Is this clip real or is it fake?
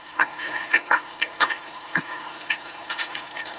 fake